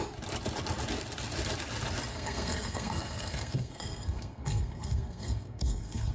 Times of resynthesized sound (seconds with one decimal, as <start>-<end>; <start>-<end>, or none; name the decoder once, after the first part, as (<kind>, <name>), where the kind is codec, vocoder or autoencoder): 2.1-6.1 (codec, SNAC)